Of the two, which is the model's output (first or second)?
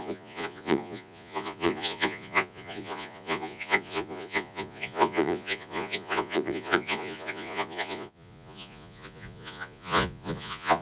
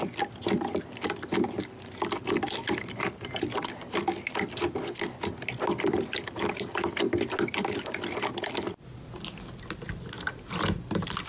first